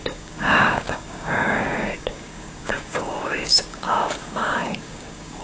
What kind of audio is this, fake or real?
fake